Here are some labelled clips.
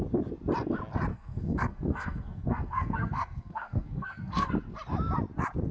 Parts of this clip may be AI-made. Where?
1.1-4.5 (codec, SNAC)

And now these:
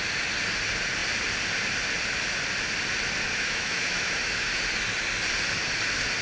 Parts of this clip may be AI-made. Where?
3.3-4.6 (autoencoder, DAC-VAE)

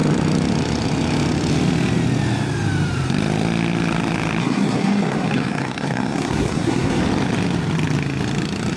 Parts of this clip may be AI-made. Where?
4.4-7.0 (codec, SNAC)

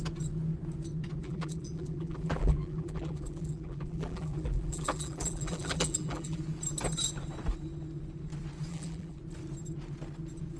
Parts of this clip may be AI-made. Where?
1.2-6.4 (vocoder, BigVGAN v2); 8.7-9.2

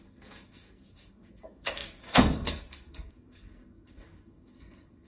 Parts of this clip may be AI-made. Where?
0.0-5.1 (codec, SNAC)